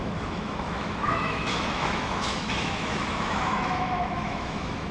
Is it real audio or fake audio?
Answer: fake